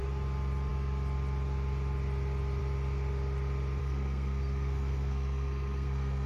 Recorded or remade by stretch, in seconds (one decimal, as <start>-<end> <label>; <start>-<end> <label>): 0.0-3.8 recorded; 3.8-6.3 remade